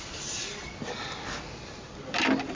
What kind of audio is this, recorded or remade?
recorded